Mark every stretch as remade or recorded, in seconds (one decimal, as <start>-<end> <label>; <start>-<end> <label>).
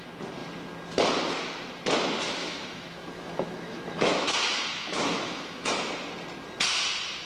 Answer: 0.0-2.4 recorded; 2.4-5.8 remade; 5.8-7.2 recorded